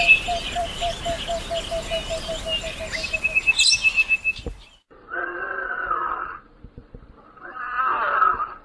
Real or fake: real